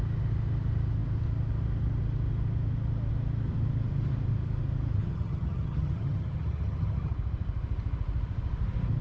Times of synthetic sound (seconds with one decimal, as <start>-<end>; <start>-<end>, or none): 5.0-7.1